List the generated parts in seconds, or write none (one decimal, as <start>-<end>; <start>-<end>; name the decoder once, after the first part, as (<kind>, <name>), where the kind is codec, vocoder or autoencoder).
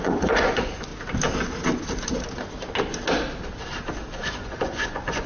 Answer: 0.0-0.9 (vocoder, Vocos); 4.1-5.3